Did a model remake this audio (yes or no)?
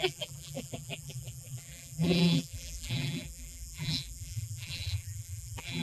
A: yes